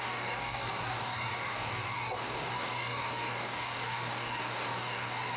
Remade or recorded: remade